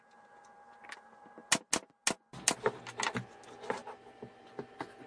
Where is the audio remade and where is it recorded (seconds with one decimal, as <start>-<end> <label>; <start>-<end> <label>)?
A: 0.0-5.1 recorded